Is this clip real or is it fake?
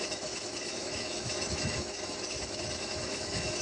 fake